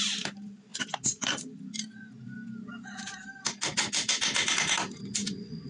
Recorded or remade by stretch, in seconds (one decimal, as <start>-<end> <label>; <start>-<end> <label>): 0.0-5.2 recorded; 5.2-5.7 remade